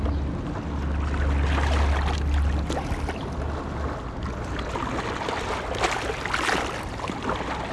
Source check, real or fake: real